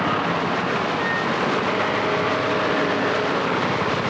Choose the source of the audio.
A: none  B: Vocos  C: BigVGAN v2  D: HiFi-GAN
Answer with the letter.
A